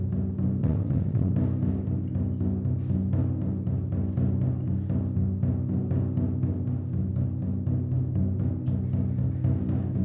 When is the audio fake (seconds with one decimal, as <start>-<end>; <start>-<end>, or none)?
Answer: 0.6-1.3